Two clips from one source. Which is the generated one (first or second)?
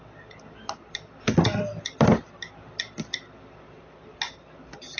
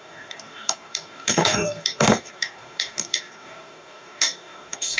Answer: second